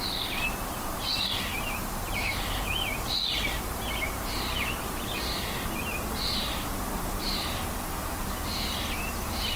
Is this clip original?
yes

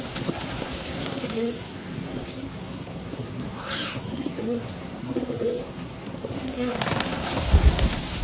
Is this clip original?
no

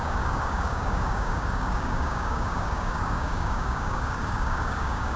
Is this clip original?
no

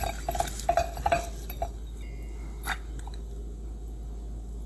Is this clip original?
yes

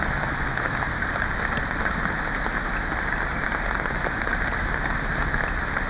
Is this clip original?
yes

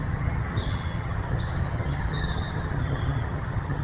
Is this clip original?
no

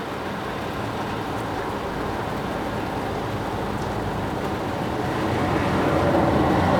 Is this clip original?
yes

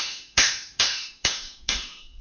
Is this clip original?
no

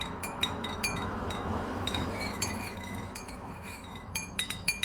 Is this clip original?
no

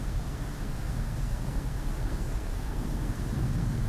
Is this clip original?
no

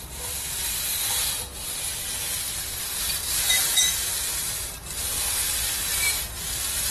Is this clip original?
yes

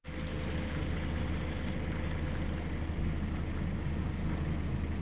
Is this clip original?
yes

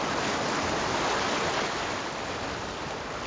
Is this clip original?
yes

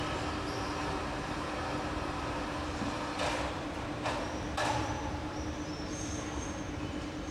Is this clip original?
no